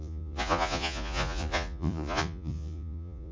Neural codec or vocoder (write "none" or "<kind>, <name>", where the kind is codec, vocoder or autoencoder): vocoder, Vocos